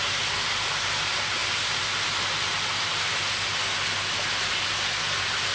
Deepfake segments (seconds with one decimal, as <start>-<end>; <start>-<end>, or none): none